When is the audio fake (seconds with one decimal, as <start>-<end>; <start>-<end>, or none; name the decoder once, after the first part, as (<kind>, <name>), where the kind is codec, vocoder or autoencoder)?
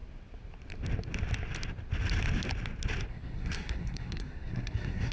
3.1-5.1 (codec, SNAC)